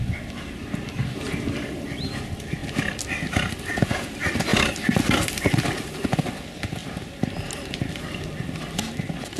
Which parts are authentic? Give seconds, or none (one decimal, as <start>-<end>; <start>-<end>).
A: 0.0-9.4